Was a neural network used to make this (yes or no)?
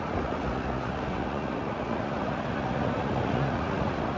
yes